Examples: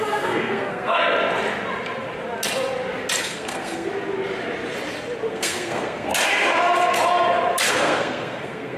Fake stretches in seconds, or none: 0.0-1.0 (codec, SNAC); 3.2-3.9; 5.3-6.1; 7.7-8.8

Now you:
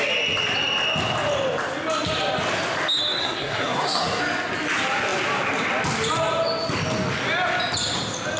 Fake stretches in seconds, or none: 3.2-4.2 (codec, SNAC)